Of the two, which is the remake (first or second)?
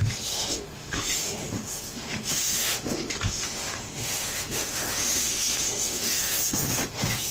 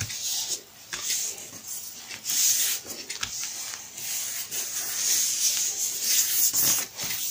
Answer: first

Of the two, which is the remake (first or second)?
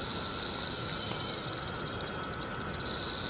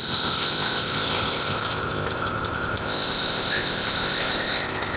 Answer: second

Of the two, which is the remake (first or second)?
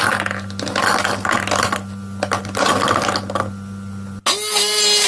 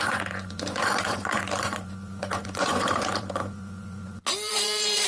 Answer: second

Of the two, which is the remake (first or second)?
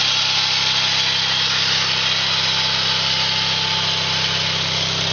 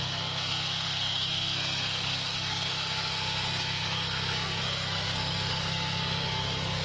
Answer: second